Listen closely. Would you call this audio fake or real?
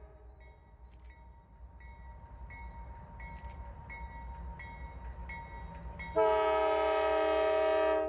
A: real